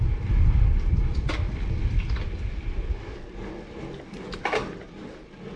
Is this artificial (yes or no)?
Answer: no